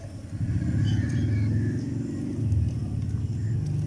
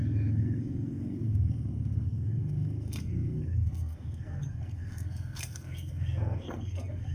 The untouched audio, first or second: first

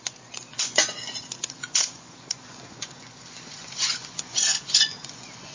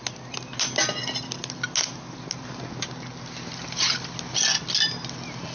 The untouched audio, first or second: second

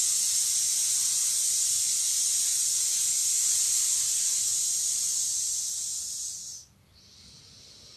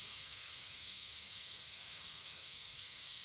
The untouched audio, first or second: first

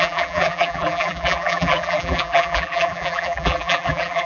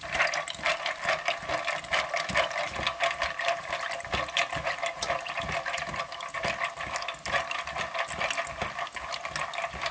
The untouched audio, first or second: second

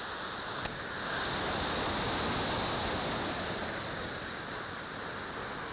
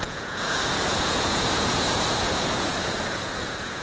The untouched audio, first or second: first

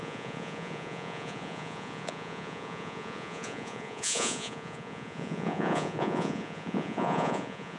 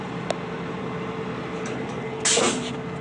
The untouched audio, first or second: second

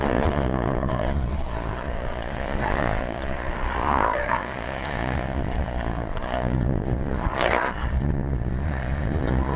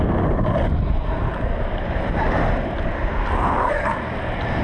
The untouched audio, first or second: second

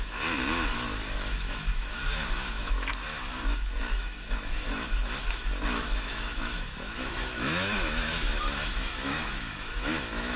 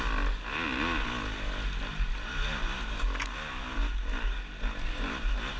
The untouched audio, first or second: second